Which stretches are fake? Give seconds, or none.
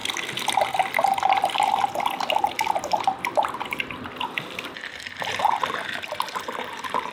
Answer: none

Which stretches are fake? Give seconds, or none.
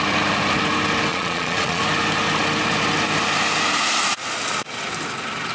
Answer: 1.1-1.8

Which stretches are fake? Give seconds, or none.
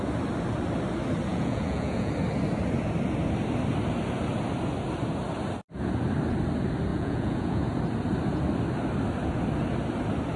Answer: 1.3-2.1; 6.9-7.6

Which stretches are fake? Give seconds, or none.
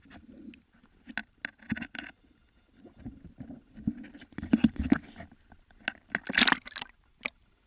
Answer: none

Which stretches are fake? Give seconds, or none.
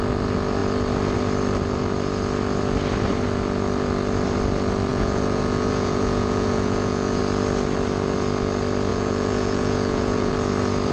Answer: 4.9-7.2; 8.9-10.3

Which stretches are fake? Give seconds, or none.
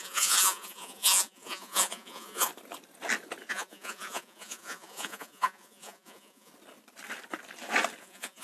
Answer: 0.0-2.5; 3.5-6.5; 8.0-8.4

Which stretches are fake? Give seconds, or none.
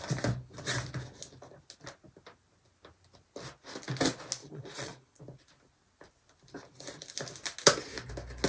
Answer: 4.4-5.2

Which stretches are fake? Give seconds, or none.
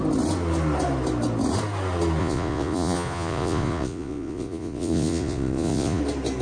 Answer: 2.2-6.0